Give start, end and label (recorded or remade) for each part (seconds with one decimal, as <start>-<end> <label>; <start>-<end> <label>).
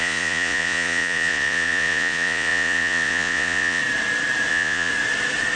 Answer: 0.0-3.8 remade; 3.8-4.5 recorded; 4.5-4.9 remade; 4.9-5.6 recorded